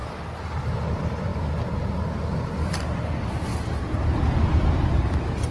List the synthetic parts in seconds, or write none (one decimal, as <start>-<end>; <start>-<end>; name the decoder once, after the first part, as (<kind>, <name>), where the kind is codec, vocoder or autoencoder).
0.9-1.3 (vocoder, BigVGAN v2); 2.3-3.5; 4.9-5.5